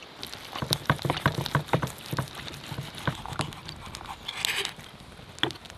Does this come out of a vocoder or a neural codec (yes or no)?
no